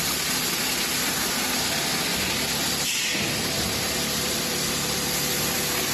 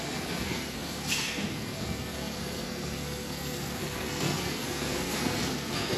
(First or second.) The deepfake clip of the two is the second